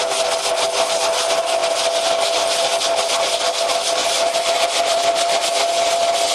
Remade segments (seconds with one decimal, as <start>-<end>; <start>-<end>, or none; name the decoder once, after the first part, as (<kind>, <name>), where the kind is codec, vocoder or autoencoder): 4.0-5.4 (vocoder, BigVGAN v2)